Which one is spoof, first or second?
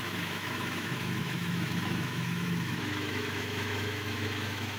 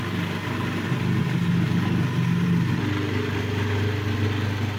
first